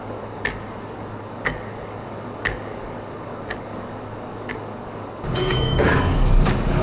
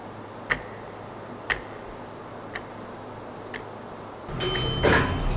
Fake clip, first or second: first